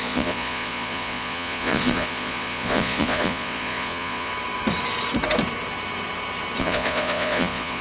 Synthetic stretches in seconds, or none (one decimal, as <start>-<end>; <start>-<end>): 0.0-4.3; 6.6-7.8